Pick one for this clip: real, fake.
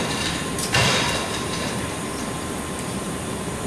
fake